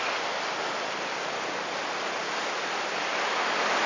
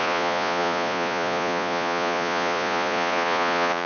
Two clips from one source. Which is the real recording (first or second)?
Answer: first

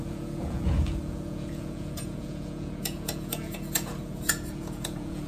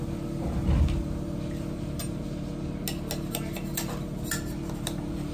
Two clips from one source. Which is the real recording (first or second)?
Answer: second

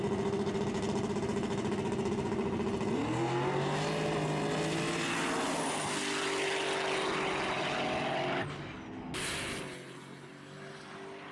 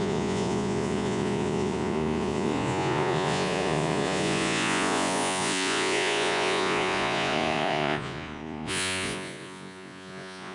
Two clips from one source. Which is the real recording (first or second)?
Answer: first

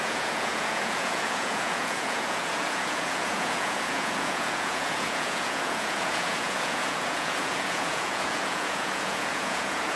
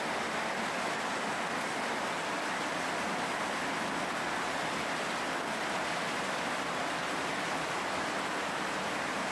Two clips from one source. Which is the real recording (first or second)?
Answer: second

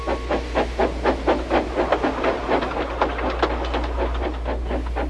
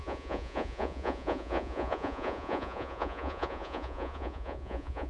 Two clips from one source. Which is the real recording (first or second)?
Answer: first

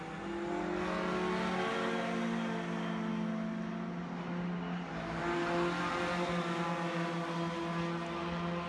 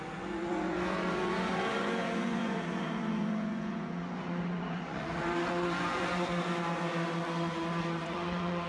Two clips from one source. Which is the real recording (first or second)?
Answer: first